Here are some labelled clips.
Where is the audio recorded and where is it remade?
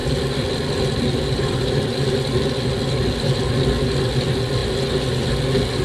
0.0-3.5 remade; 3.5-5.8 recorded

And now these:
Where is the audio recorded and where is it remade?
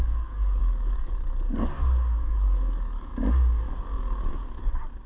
0.0-3.1 remade; 3.1-4.3 recorded; 4.3-5.1 remade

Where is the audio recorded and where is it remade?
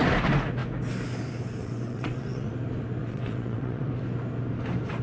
0.0-1.6 recorded; 1.6-2.5 remade; 2.5-3.0 recorded; 3.0-3.9 remade; 3.9-5.0 recorded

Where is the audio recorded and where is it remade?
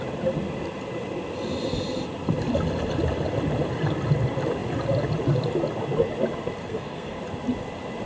0.0-6.6 recorded; 6.6-7.2 remade; 7.2-8.1 recorded